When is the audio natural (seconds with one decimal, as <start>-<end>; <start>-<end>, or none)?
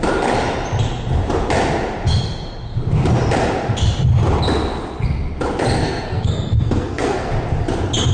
0.0-5.8; 7.3-8.1